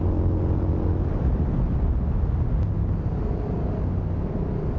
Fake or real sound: real